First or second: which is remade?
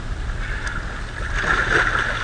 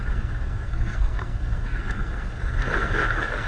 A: second